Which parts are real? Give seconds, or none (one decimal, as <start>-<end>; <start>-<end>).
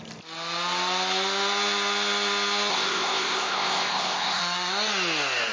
0.0-2.7; 4.4-5.5